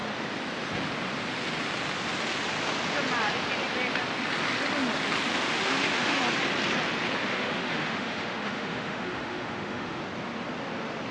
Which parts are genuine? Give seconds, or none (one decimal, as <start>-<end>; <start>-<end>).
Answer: 0.0-5.3; 6.2-7.2; 10.0-11.1